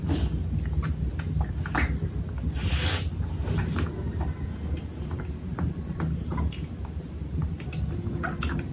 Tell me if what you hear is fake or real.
real